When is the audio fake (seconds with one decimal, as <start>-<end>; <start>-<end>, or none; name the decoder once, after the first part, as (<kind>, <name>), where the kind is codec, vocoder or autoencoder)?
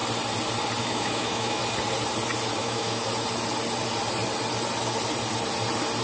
0.8-1.6 (autoencoder, DAC-VAE); 2.6-3.0